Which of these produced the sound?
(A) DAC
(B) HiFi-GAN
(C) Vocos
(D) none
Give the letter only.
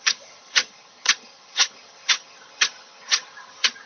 B